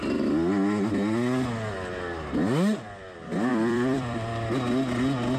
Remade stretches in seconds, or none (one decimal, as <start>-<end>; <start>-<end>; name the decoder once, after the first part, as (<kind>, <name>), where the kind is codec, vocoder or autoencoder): 3.5-4.5 (vocoder, BigVGAN v2)